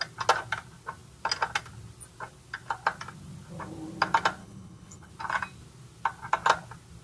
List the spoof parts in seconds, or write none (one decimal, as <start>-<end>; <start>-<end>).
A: 4.4-5.1